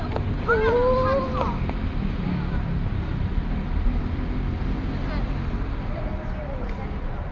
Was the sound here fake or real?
real